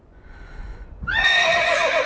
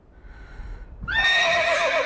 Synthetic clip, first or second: first